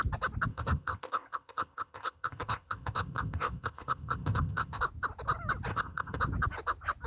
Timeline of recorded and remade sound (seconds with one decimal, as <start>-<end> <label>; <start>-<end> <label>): 0.0-0.5 recorded; 0.5-4.8 remade; 4.8-5.7 recorded; 5.7-6.2 remade; 6.2-7.1 recorded